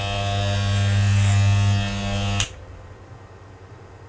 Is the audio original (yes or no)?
yes